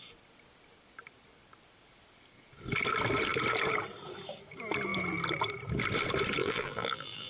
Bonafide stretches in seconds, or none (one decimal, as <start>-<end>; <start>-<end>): 0.0-6.4